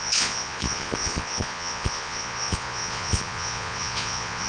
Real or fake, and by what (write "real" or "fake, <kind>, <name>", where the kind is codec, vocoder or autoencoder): fake, vocoder, Vocos